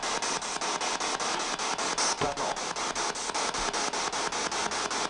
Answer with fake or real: real